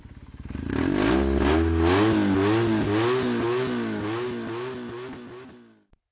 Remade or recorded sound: recorded